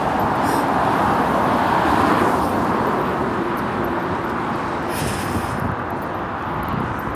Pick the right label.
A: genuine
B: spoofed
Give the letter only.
A